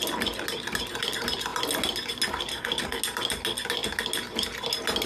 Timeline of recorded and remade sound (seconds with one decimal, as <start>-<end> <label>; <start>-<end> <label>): 0.0-2.5 recorded; 2.5-3.0 remade; 3.0-5.1 recorded